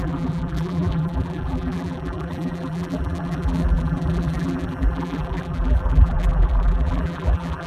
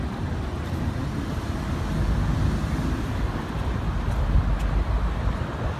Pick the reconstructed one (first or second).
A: first